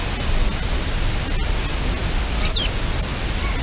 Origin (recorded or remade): recorded